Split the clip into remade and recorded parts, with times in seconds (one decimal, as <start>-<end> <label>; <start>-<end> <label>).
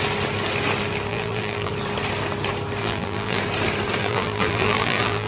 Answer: 0.0-1.1 recorded; 1.1-1.7 remade; 1.7-2.8 recorded; 2.8-3.4 remade; 3.4-4.0 recorded; 4.0-5.3 remade